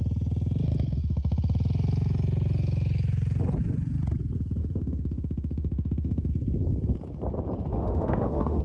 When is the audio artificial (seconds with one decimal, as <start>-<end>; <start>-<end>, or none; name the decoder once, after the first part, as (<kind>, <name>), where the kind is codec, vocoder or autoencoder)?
4.6-6.3 (autoencoder, DAC-VAE); 7.7-8.6